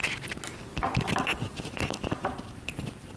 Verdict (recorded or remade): recorded